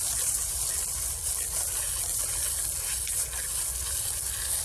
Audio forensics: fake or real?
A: real